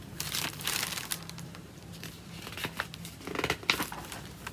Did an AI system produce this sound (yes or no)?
no